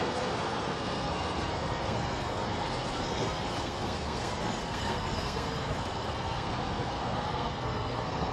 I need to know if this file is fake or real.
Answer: fake